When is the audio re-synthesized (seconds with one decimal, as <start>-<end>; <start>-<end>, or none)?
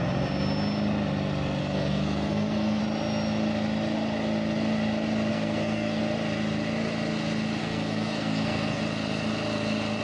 1.6-2.8; 5.3-6.0; 7.6-8.8